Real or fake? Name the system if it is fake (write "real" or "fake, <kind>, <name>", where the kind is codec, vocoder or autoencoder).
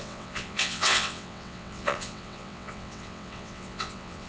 fake, vocoder, WaveNeXt